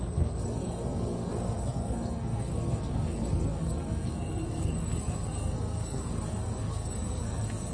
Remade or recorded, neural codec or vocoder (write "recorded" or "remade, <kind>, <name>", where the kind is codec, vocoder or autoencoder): remade, codec, SNAC